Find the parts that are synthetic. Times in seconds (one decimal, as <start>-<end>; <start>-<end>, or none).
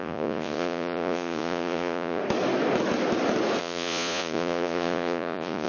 0.0-2.2; 3.6-5.7